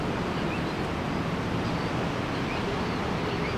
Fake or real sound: real